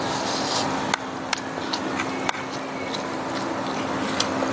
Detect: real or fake real